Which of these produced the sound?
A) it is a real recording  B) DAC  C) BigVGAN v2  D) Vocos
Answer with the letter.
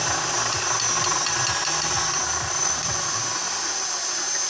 C